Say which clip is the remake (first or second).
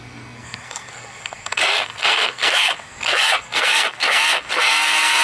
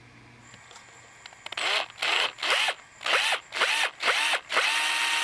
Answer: first